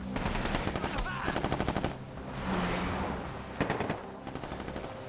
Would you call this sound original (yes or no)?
yes